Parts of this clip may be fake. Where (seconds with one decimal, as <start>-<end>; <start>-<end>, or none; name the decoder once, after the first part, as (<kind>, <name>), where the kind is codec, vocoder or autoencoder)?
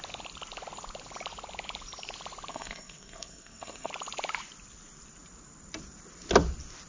2.5-3.9 (codec, SNAC)